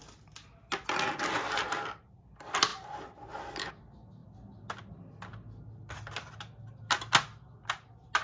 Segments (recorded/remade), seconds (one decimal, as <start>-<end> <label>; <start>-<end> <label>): 0.0-8.2 recorded